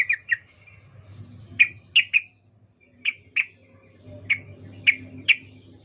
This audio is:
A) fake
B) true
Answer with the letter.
B